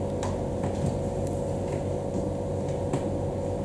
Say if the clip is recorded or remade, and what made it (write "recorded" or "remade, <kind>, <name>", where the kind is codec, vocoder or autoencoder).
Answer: recorded